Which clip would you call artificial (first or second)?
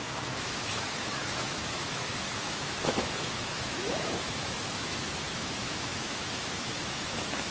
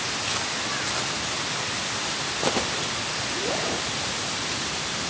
first